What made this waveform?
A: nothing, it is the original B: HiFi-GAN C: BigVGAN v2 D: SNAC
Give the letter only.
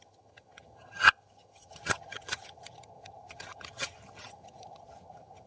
B